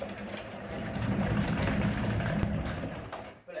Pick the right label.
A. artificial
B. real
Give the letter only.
A